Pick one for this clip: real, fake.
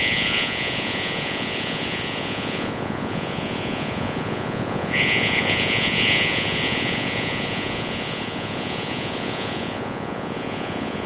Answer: fake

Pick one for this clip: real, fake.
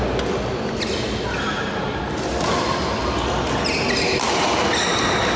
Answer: real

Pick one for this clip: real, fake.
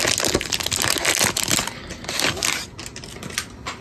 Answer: real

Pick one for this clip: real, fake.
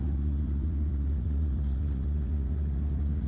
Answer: fake